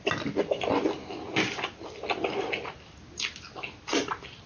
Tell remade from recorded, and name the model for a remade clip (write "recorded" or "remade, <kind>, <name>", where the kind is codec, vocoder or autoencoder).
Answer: recorded